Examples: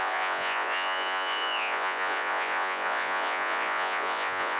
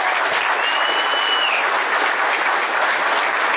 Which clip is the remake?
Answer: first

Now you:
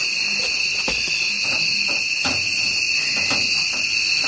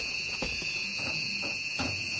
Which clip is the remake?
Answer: second